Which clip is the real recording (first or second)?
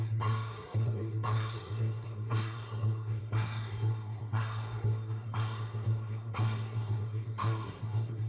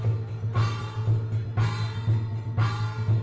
second